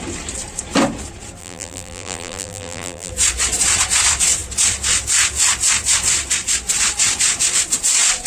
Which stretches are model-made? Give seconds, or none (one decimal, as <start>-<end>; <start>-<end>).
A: 1.4-3.1